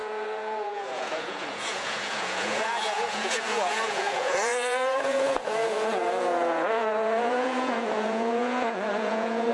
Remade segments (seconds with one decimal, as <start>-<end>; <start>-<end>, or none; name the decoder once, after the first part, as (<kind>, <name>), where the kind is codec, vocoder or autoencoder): 0.0-9.5 (vocoder, Vocos)